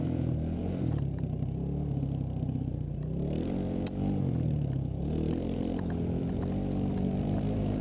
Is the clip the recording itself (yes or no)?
no